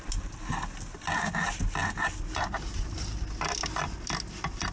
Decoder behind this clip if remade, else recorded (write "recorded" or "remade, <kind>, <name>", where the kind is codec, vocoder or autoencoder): recorded